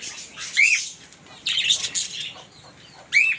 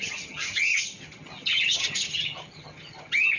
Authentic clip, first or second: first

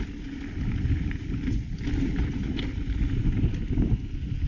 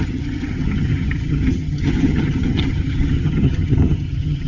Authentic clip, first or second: first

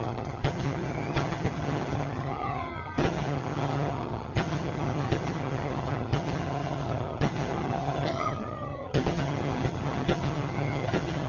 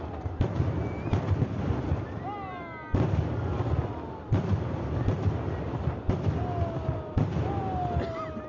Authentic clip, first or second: second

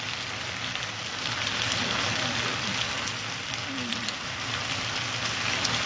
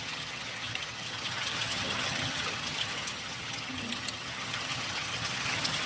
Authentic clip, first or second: first